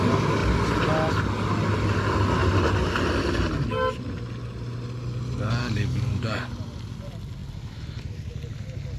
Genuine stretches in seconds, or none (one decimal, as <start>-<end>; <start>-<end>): 0.0-5.6; 6.5-9.0